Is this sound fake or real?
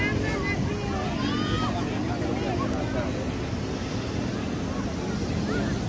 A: real